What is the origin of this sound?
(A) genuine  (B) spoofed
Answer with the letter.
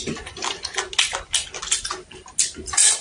A